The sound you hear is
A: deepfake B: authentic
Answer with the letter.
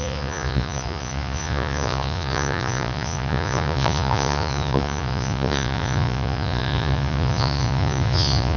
A